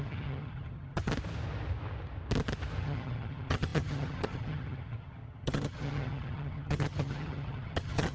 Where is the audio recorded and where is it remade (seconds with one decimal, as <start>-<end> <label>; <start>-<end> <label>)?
0.0-1.1 remade; 1.1-2.8 recorded; 2.8-8.1 remade